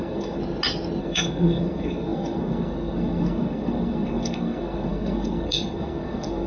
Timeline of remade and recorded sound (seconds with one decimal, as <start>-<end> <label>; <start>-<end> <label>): 0.0-0.4 remade; 0.4-1.0 recorded; 1.0-6.5 remade